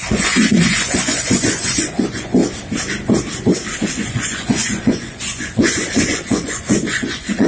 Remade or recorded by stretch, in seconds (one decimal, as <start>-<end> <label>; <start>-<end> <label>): 0.0-2.4 remade; 2.4-3.9 recorded; 3.9-7.5 remade